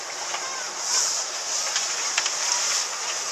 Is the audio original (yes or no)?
yes